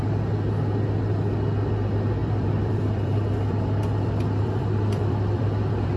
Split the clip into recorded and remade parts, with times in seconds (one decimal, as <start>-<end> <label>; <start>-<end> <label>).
0.0-2.2 recorded; 2.2-6.0 remade